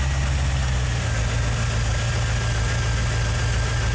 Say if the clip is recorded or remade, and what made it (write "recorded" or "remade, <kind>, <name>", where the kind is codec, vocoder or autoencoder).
recorded